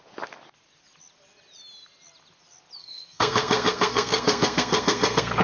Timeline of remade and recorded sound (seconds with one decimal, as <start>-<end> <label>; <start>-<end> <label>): 0.0-2.8 recorded; 2.8-5.4 remade